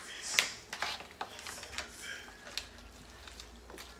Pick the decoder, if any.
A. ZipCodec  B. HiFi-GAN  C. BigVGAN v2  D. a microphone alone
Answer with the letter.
D